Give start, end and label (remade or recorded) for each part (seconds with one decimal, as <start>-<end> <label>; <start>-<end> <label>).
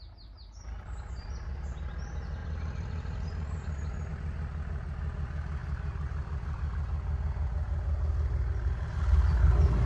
0.0-2.4 recorded; 2.4-4.1 remade; 4.1-9.9 recorded